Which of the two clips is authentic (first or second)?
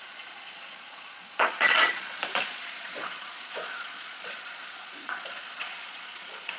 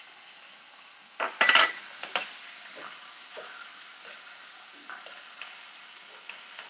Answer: second